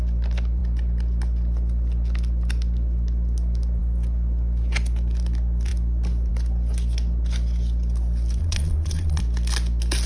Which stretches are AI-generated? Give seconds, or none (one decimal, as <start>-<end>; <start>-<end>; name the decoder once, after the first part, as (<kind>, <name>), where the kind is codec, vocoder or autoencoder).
8.4-9.2 (vocoder, Vocos)